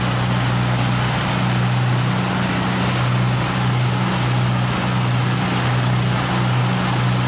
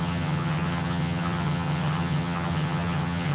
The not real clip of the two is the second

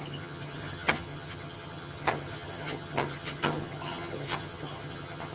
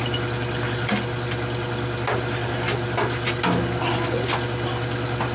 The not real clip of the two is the first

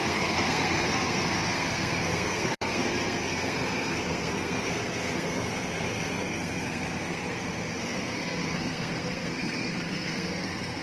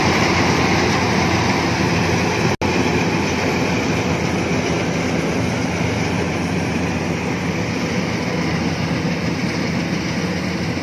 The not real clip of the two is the first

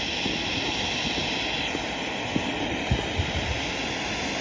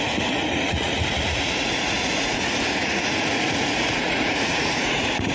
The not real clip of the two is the second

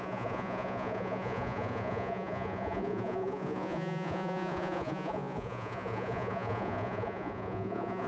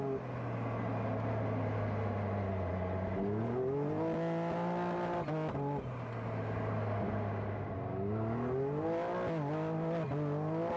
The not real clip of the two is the first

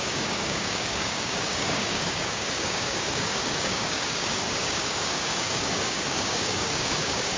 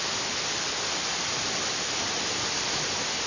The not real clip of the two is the first